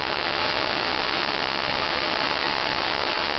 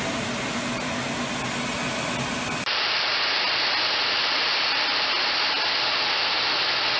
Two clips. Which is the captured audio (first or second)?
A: second